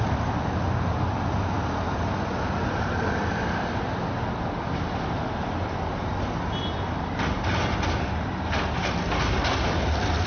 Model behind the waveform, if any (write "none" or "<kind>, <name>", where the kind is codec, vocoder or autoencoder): none